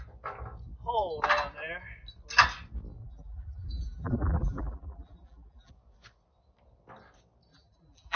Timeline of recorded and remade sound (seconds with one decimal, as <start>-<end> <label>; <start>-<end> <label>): 0.0-3.0 recorded; 3.0-5.7 remade; 5.7-7.5 recorded; 7.5-8.2 remade